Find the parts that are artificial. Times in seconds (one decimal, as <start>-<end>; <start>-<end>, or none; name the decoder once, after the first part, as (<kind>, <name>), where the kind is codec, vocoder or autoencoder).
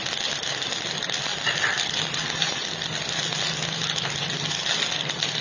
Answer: none